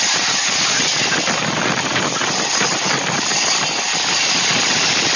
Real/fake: real